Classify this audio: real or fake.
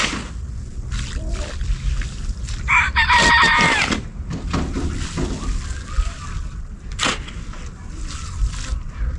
real